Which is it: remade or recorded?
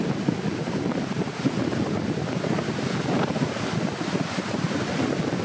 recorded